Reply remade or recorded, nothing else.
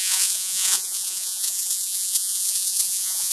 remade